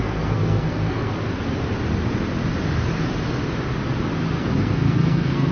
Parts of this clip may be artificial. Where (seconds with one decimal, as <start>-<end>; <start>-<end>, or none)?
0.0-1.1; 4.4-5.5